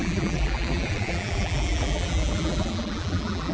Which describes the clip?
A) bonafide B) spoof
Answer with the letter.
B